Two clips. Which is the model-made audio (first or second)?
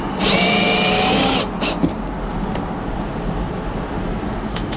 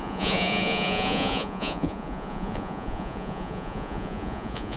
second